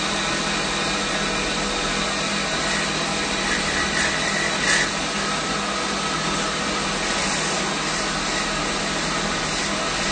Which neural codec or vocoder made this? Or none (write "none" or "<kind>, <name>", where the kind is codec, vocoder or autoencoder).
none